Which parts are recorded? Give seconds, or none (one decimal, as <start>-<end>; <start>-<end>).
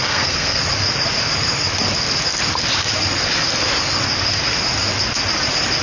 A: 0.6-5.8